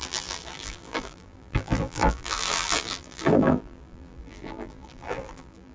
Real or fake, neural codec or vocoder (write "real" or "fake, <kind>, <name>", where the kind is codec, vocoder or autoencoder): fake, vocoder, BigVGAN v2